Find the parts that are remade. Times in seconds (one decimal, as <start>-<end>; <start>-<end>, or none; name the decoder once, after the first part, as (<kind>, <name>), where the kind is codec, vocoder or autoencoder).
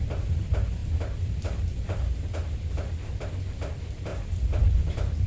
0.8-3.3 (vocoder, BigVGAN v2); 4.1-5.3